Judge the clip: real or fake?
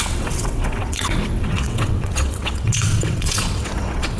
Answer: fake